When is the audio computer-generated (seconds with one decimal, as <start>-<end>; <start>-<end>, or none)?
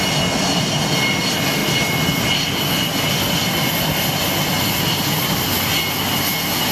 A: none